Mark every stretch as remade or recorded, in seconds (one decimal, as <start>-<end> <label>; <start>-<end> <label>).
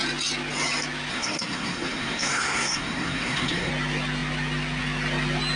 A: 0.0-1.1 recorded; 1.1-3.7 remade; 3.7-5.6 recorded